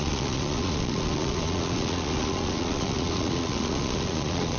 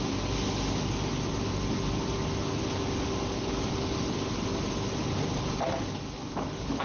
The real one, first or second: second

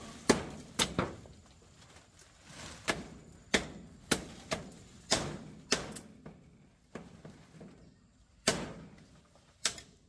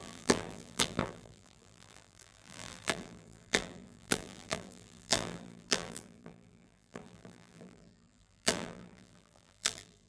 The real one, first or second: first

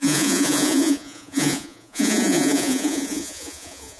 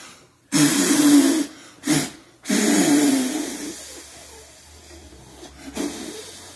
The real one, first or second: second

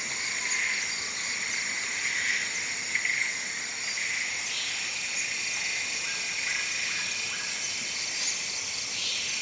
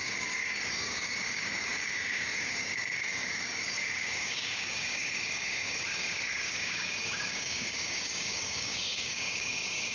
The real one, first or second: first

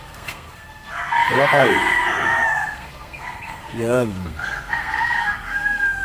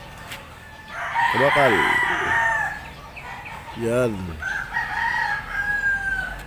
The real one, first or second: second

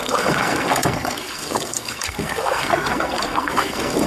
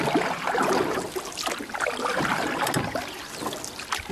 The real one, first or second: second